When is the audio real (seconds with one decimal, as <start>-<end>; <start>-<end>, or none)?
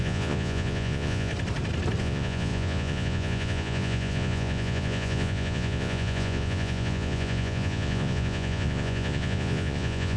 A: 1.3-2.0